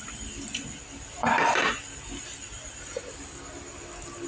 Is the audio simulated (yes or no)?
no